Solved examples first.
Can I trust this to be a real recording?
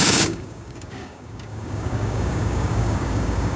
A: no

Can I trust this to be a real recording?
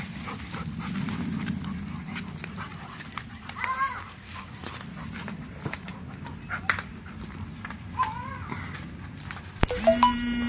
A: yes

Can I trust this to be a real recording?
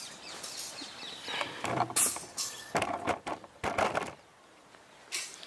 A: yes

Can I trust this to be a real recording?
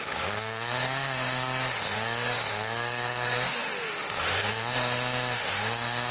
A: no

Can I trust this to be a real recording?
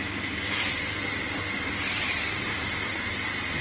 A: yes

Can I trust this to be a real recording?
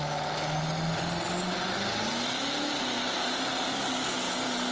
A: yes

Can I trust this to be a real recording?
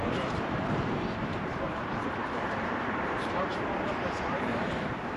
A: no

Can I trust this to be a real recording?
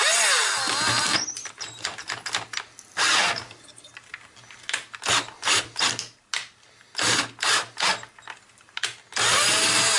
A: yes